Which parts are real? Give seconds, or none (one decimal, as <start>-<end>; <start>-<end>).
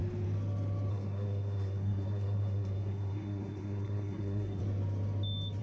0.0-0.9; 4.6-5.6